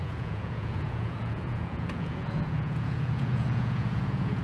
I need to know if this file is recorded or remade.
remade